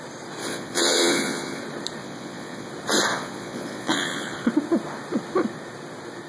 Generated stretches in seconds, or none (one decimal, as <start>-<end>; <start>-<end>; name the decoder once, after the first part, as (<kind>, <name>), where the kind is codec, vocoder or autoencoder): 0.4-1.6 (vocoder, Vocos); 2.0-2.7; 3.1-4.5